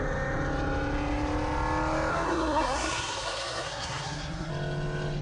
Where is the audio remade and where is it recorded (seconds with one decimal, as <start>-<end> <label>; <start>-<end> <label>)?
0.0-2.1 recorded; 2.1-4.5 remade; 4.5-5.2 recorded